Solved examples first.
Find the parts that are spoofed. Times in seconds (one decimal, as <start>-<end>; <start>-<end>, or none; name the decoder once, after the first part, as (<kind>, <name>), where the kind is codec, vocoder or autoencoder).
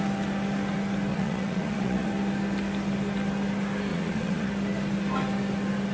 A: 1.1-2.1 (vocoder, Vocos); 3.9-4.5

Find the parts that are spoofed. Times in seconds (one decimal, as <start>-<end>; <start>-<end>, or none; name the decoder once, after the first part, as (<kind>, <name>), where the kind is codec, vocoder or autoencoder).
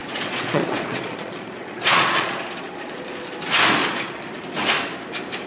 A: 0.0-3.3 (vocoder, Vocos); 3.8-4.3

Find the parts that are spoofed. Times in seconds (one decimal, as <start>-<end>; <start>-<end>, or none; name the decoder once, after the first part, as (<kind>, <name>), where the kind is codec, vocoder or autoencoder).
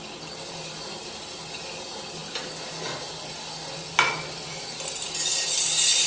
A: none